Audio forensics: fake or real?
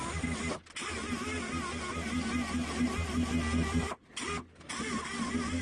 real